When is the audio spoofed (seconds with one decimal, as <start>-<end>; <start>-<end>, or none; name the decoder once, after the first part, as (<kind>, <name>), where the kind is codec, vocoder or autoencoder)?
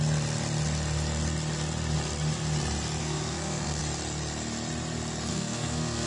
3.0-3.8 (codec, SNAC); 5.3-6.1